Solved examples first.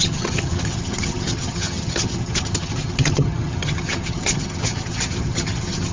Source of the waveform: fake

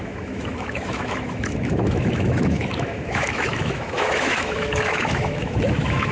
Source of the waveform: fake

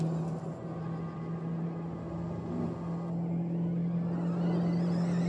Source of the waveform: real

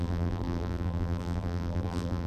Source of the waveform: fake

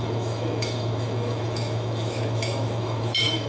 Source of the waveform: fake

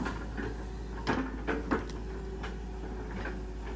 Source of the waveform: real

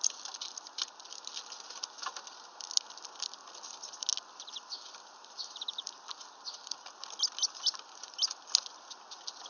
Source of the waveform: real